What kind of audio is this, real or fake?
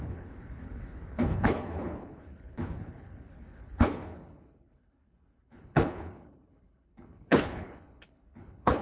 fake